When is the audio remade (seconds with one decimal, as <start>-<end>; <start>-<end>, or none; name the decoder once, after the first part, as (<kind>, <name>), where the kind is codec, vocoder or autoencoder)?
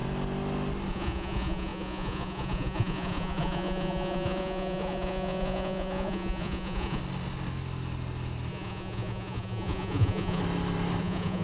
0.9-7.0 (vocoder, Vocos); 8.5-10.4; 11.0-11.4